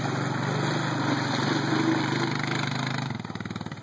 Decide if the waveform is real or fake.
real